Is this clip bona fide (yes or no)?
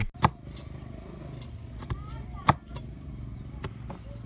yes